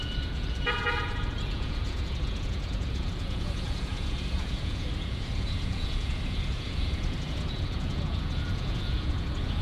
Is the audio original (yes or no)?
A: no